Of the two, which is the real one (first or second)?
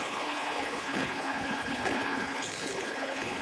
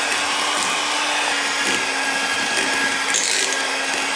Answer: second